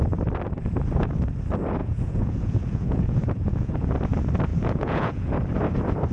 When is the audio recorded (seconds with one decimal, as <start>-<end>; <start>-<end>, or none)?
0.0-1.8; 3.9-4.5; 5.3-6.1